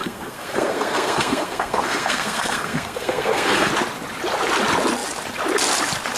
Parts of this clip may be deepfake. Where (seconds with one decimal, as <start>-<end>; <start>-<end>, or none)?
0.0-3.7